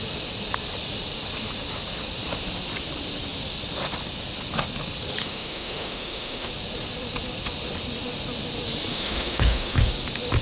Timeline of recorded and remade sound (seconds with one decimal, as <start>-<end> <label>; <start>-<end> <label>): 0.0-5.2 recorded; 5.2-6.5 remade; 6.5-8.9 recorded; 8.9-9.9 remade; 9.9-10.4 recorded